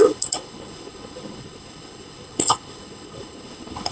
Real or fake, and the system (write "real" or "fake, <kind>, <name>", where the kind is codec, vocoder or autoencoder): fake, codec, HILCodec